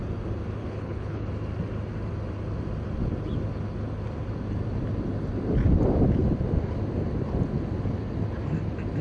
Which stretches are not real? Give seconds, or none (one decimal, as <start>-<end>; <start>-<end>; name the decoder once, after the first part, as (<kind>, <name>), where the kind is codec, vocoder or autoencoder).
0.6-1.3 (codec, HILCodec)